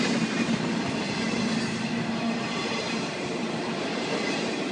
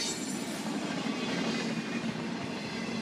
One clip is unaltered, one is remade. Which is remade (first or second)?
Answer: first